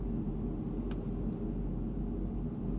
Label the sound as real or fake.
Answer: real